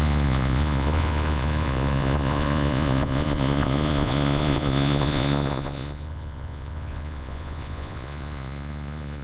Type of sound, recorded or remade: remade